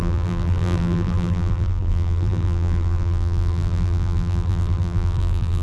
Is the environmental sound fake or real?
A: fake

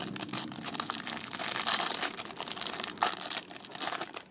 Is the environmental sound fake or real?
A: real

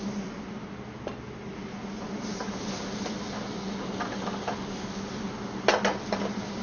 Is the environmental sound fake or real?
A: real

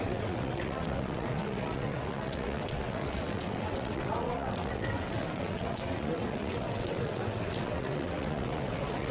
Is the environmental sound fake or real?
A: fake